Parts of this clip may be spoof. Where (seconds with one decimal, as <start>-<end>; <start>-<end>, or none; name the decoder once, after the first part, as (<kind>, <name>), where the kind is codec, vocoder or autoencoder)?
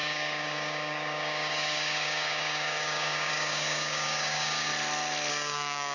0.0-4.7 (codec, DAC); 5.3-5.9